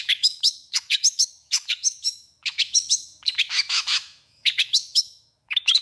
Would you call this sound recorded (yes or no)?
no